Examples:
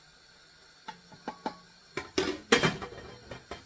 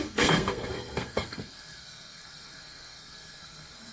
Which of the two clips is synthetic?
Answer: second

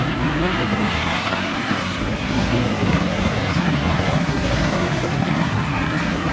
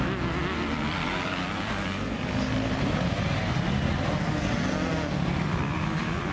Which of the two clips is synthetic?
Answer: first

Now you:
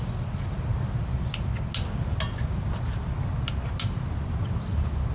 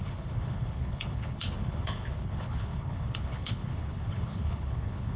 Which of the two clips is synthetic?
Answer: second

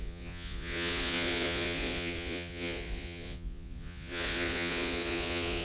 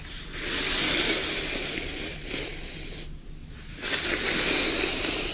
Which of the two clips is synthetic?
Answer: first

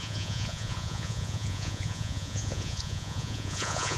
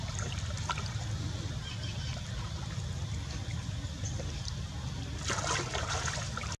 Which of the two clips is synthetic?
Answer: first